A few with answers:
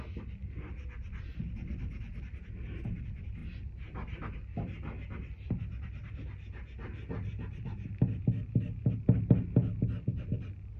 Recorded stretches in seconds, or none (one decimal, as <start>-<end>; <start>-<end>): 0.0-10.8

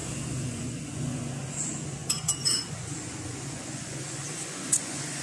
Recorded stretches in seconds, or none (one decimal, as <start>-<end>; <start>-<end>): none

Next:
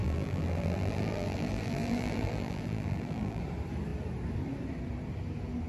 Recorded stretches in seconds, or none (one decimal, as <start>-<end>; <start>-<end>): 3.4-5.7

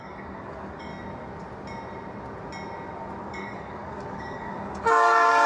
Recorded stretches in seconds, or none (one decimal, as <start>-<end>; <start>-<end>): 0.9-3.2

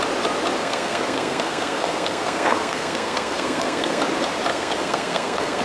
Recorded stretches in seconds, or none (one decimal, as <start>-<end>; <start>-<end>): 0.0-0.6; 4.0-4.5